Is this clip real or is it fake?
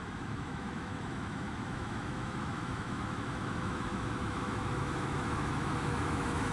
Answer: fake